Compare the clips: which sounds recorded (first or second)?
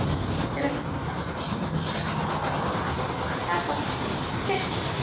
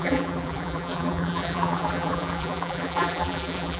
first